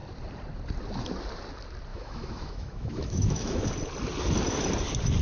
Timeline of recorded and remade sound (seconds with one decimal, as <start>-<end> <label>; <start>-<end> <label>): 0.0-1.9 recorded; 1.9-3.7 remade; 3.7-5.2 recorded